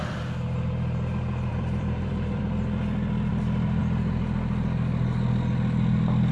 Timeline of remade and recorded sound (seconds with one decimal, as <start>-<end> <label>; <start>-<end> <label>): 0.0-1.5 recorded; 1.5-2.4 remade; 2.4-3.3 recorded; 3.3-3.8 remade; 3.8-6.3 recorded